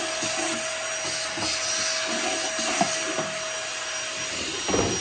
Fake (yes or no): no